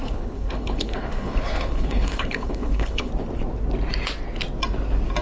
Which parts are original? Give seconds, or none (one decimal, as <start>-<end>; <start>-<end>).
3.1-5.2

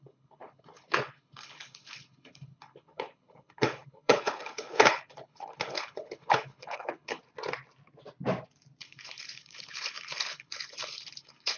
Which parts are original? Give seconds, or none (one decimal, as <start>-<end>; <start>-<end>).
7.2-8.8

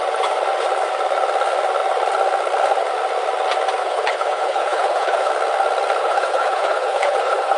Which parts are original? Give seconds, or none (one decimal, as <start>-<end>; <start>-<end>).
0.0-3.8; 5.3-6.0

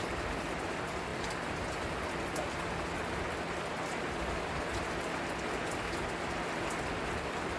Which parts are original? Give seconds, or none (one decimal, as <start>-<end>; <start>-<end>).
0.0-7.6

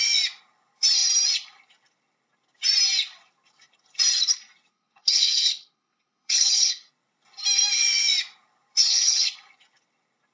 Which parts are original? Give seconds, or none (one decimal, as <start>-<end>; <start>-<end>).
0.0-4.7; 6.8-8.8; 9.3-10.3

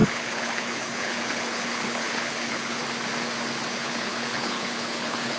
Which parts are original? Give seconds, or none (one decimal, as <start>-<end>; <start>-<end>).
2.8-3.7

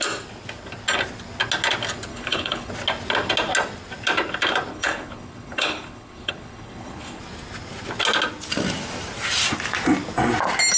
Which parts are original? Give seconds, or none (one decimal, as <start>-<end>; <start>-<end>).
0.0-2.1; 2.7-4.7; 7.2-10.8